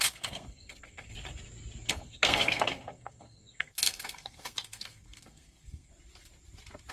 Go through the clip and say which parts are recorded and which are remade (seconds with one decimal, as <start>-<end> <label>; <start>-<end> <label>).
0.0-1.1 remade; 1.1-1.9 recorded; 1.9-5.9 remade; 5.9-6.9 recorded